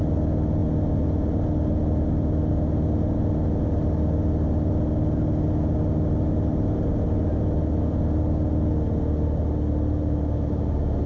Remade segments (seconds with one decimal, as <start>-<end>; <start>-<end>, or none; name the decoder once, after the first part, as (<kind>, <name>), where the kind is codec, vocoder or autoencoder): none

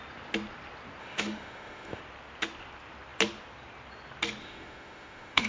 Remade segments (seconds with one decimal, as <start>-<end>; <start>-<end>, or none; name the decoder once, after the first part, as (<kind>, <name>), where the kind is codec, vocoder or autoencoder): 1.0-2.0 (autoencoder, DAC-VAE); 4.4-5.5

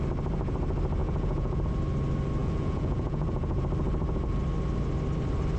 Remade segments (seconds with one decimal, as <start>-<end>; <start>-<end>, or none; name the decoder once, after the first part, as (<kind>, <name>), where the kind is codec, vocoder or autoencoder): 1.0-1.6 (vocoder, Vocos); 2.4-3.6

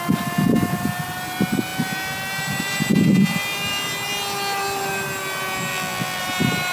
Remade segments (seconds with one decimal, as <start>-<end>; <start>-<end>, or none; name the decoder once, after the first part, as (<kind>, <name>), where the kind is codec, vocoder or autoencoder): 5.7-6.2 (vocoder, BigVGAN v2)